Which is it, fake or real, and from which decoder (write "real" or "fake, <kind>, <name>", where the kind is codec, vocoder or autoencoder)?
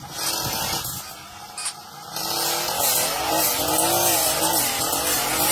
real